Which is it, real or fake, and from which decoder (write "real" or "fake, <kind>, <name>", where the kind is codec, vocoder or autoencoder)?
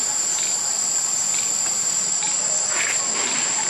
real